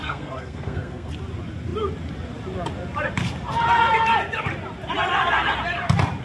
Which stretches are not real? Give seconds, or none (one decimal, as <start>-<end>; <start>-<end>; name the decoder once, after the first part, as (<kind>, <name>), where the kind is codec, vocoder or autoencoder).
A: 0.0-1.1 (codec, SNAC)